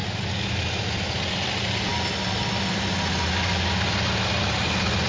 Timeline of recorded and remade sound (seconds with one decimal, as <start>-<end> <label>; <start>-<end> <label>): 0.0-5.1 recorded